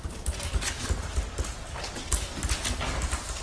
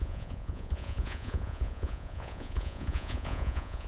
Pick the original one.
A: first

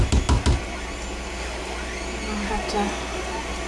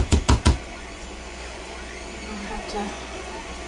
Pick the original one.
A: first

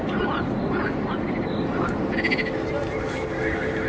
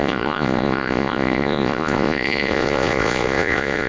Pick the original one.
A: first